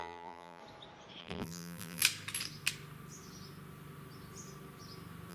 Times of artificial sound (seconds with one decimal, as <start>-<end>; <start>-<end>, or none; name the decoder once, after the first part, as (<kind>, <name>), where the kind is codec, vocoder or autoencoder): 0.0-0.6 (vocoder, BigVGAN v2); 1.2-2.0